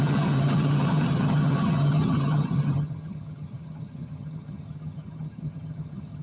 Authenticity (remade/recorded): remade